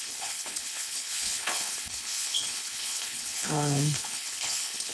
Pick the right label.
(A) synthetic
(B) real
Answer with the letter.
A